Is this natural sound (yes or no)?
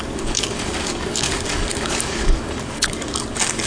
no